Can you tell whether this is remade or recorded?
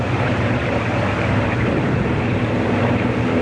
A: remade